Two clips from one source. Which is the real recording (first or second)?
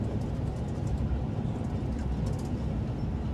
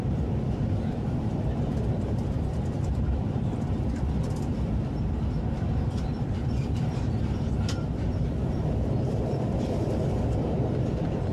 first